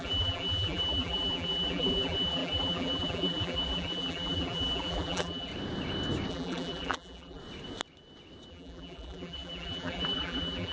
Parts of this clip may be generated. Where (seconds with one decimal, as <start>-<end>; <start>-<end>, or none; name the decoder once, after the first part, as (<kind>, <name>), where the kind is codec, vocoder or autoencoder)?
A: 0.0-5.5 (vocoder, BigVGAN v2); 6.3-7.4; 8.5-10.7